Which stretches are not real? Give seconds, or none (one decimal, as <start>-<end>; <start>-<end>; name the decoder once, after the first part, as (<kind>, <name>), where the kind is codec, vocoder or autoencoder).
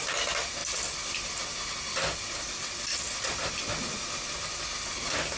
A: none